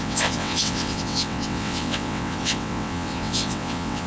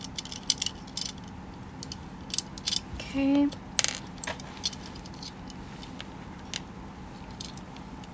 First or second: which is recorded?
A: second